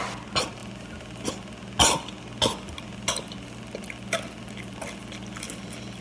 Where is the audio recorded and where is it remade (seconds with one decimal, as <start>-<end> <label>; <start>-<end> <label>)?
0.0-6.0 recorded